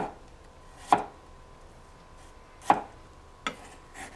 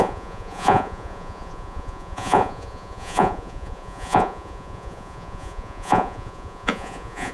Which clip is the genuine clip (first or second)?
first